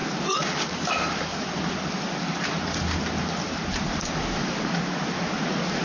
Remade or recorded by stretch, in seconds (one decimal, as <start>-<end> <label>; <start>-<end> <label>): 0.0-1.3 recorded; 1.3-4.8 remade; 4.8-5.8 recorded